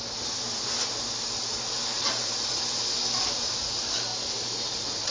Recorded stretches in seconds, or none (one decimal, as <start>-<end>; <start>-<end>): 0.0-5.1

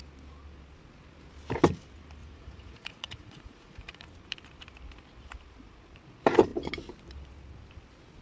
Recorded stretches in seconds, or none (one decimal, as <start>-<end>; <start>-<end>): 0.0-2.2; 4.1-8.2